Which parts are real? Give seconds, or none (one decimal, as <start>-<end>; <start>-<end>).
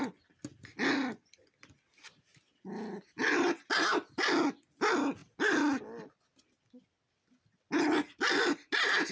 0.0-9.1